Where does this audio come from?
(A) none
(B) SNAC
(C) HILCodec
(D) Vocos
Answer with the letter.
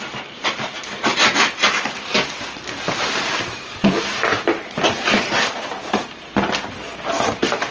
A